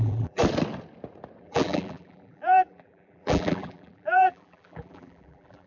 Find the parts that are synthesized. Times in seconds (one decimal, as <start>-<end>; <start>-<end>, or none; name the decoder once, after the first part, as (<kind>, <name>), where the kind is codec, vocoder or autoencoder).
0.0-0.4 (vocoder, BigVGAN v2); 1.4-5.7